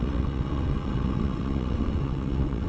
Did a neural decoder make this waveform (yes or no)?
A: yes